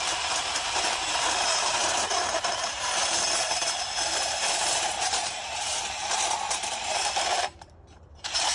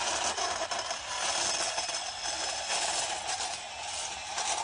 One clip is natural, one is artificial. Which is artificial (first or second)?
first